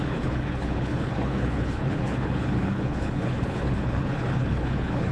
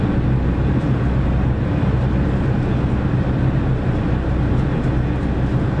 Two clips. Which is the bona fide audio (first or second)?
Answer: second